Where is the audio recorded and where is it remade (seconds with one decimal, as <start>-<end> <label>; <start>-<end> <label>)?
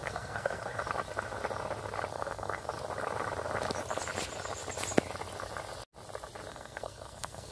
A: 0.0-0.8 remade; 0.8-2.1 recorded; 2.1-2.7 remade; 2.7-6.5 recorded; 6.5-7.5 remade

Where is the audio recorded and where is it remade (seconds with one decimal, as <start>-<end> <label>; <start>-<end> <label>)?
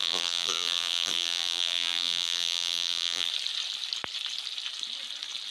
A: 0.0-3.3 remade; 3.3-5.5 recorded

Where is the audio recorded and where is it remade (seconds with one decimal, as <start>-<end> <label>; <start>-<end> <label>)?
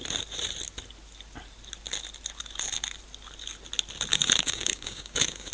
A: 0.0-4.1 recorded; 4.1-5.5 remade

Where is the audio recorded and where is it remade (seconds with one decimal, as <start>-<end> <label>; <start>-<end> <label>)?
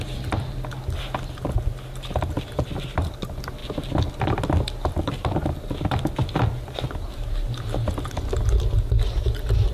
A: 0.0-9.7 recorded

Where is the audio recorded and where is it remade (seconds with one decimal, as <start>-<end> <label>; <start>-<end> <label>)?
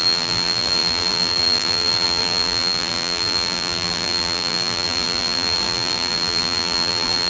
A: 0.0-7.3 remade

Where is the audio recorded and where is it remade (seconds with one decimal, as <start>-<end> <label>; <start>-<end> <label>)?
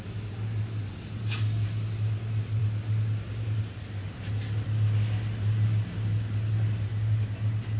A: 0.0-7.8 recorded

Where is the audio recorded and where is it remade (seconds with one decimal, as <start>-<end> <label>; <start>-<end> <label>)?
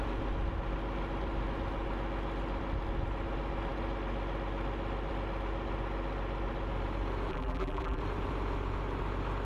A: 0.0-7.3 recorded; 7.3-8.0 remade; 8.0-9.4 recorded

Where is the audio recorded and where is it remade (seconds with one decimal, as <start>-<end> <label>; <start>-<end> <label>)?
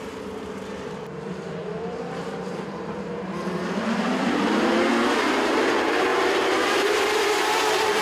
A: 0.0-4.7 remade; 4.7-5.3 recorded; 5.3-8.0 remade